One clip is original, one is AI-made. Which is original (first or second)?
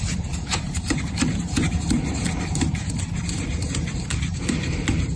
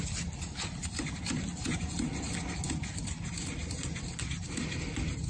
second